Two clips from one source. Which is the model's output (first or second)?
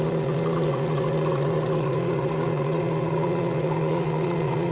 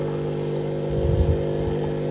first